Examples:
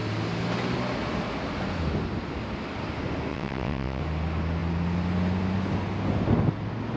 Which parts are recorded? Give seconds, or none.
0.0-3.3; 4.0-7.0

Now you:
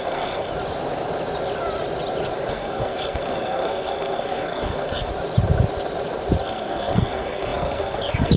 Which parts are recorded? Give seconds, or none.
0.5-2.5; 5.1-6.4

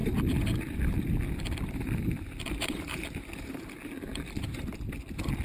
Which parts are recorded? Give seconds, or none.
3.2-4.1; 4.7-5.4

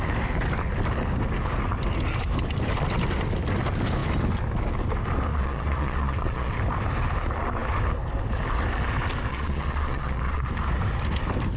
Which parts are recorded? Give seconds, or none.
0.0-5.3; 6.5-9.3; 10.5-11.6

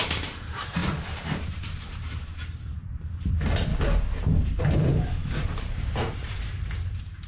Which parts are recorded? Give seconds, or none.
3.7-4.6

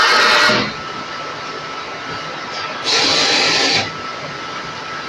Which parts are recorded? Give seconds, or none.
0.0-5.1

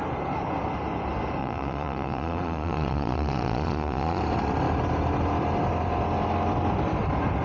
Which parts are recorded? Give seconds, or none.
0.0-1.4; 4.2-7.4

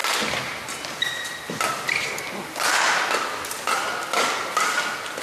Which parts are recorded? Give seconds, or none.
0.0-5.2